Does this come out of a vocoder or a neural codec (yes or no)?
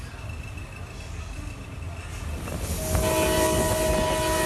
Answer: no